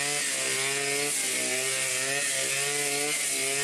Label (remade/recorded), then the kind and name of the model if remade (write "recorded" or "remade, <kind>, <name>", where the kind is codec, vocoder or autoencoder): recorded